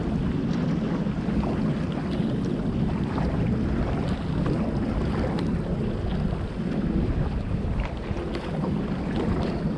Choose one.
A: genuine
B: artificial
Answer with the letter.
A